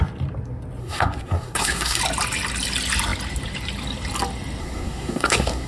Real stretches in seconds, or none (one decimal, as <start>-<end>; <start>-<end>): 0.0-0.8; 2.0-4.6